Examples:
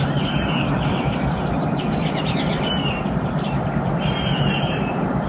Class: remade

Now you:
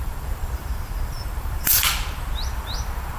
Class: remade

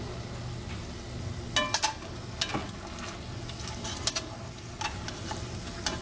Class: recorded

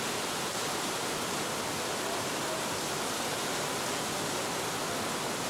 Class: recorded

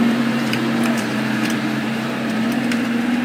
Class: remade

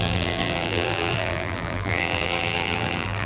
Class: remade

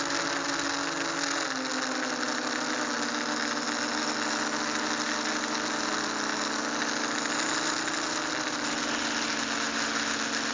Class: recorded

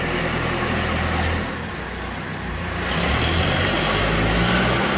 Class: recorded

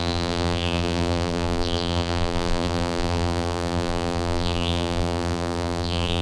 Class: remade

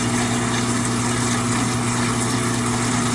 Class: recorded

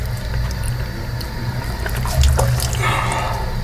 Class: recorded